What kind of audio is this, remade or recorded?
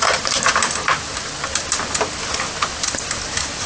recorded